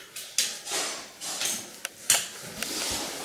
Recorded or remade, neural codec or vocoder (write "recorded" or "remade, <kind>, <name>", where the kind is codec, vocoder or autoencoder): recorded